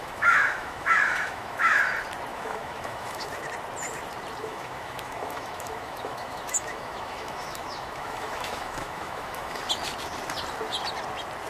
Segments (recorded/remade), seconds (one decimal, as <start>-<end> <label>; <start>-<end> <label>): 0.0-1.8 remade; 1.8-2.3 recorded; 2.3-3.3 remade; 3.3-4.4 recorded; 4.4-9.6 remade; 9.6-11.5 recorded